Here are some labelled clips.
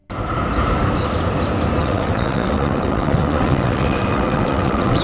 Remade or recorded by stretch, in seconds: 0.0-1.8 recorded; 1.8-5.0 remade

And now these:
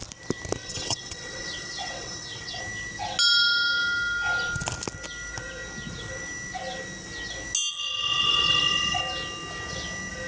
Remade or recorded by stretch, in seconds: 0.0-0.6 recorded; 0.6-2.6 remade; 2.6-7.7 recorded; 7.7-9.0 remade; 9.0-10.3 recorded

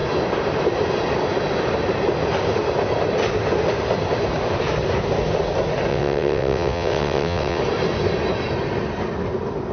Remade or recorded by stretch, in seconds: 0.0-5.9 recorded; 5.9-7.6 remade; 7.6-9.7 recorded